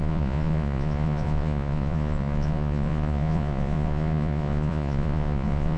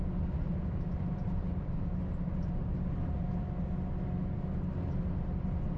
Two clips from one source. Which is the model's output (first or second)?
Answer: first